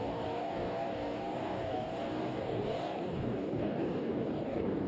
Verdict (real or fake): fake